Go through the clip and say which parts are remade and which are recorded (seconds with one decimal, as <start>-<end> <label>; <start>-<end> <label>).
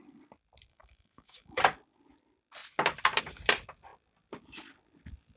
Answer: 0.0-0.7 recorded; 0.7-1.6 remade; 1.6-5.4 recorded